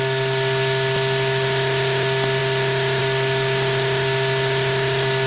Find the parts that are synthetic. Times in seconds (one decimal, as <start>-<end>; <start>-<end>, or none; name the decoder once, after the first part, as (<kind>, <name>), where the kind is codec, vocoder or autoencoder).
none